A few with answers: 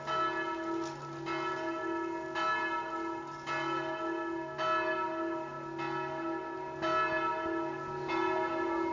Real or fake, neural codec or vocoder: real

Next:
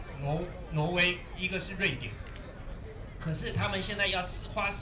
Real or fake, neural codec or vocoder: real